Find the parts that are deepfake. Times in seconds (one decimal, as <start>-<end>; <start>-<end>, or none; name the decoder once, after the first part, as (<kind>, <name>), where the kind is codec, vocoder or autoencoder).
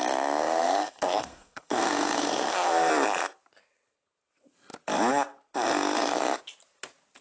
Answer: 0.4-2.9 (codec, SNAC)